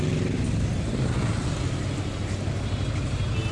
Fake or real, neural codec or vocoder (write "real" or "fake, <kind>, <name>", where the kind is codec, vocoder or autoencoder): real